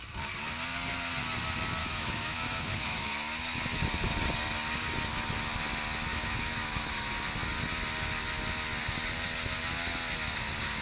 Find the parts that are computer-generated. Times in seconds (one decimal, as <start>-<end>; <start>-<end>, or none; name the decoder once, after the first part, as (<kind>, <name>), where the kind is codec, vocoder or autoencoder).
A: 1.8-3.1 (autoencoder, DAC-VAE); 6.1-7.1